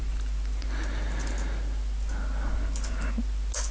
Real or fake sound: real